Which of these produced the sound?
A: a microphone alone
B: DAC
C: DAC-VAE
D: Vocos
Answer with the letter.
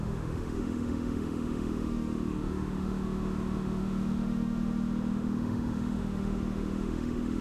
C